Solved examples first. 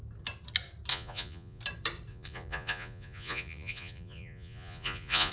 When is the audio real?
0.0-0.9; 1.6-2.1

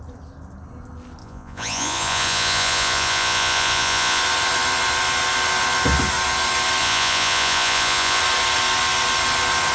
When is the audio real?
0.0-1.2; 4.2-6.8; 8.2-9.7

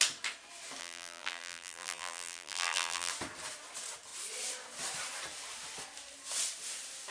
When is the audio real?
0.0-0.8; 3.1-7.1

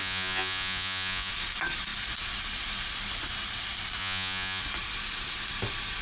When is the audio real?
1.3-4.0; 4.6-6.0

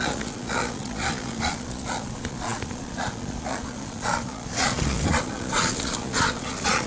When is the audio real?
none